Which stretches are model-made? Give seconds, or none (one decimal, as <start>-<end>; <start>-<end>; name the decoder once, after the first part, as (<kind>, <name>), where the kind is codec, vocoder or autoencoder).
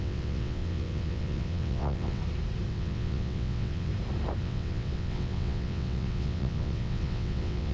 0.0-2.2 (vocoder, WaveNeXt); 2.7-3.9; 4.4-7.7